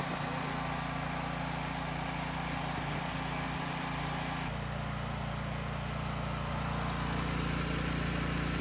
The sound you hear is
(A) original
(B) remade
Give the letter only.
A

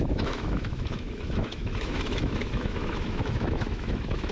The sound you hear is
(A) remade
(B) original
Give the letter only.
A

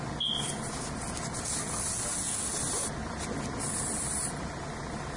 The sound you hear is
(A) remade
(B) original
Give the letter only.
B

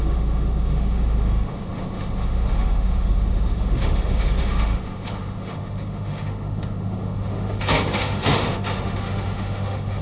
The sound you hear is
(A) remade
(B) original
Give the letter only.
A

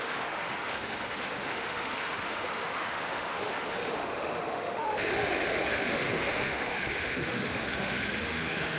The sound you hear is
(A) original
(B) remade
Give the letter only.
B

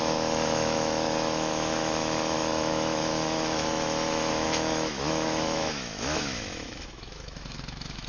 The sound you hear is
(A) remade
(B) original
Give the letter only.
A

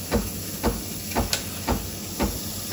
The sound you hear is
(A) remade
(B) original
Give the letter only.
B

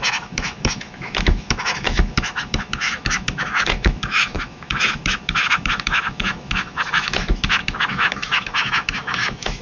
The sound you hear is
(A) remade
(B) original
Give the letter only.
A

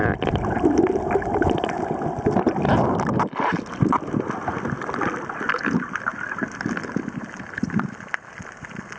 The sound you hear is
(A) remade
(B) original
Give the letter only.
B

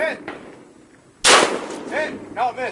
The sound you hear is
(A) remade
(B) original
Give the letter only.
B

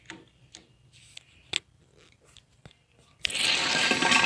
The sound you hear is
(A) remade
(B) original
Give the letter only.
B